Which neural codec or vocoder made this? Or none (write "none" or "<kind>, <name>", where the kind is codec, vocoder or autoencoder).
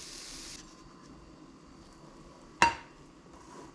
none